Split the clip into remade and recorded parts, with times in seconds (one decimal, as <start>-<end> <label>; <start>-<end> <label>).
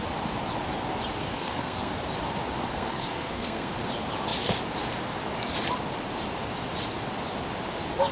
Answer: 0.0-1.2 recorded; 1.2-2.0 remade; 2.0-2.7 recorded; 2.7-3.7 remade; 3.7-8.1 recorded